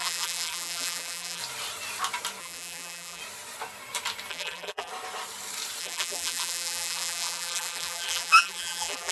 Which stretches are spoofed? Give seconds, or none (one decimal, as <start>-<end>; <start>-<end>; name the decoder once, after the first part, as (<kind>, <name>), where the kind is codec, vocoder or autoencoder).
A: 0.0-1.4 (vocoder, BigVGAN v2); 2.4-3.2; 4.3-4.9; 5.8-9.1